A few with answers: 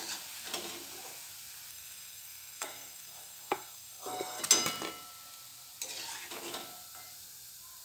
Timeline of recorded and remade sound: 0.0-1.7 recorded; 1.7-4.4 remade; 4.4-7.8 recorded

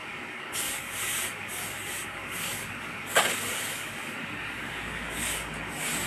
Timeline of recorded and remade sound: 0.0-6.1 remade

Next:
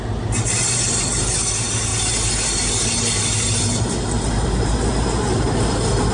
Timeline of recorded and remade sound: 0.0-6.1 recorded

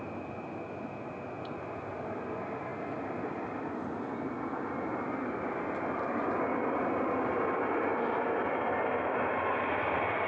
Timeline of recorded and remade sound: 0.0-10.3 recorded

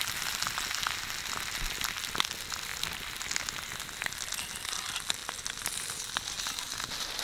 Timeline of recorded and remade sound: 0.0-7.2 recorded